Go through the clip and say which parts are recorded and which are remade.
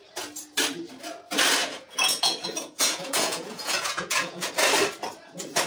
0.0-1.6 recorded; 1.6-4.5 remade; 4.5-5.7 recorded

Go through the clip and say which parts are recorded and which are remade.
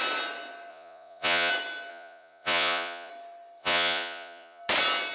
0.0-0.7 recorded; 0.7-1.5 remade; 1.5-1.9 recorded; 1.9-3.1 remade; 3.1-3.6 recorded; 3.6-4.6 remade; 4.6-5.1 recorded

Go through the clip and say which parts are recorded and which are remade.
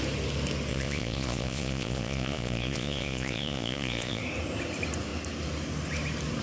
0.0-0.7 recorded; 0.7-4.2 remade; 4.2-6.4 recorded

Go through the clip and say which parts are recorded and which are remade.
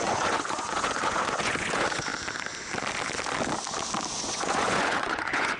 0.0-2.1 remade; 2.1-4.1 recorded; 4.1-5.6 remade